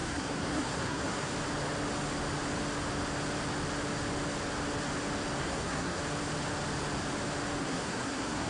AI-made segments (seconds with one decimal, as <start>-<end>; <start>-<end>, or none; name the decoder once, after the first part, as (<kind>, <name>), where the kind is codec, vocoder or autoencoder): 0.0-1.3 (codec, SNAC); 5.4-6.0; 7.6-8.5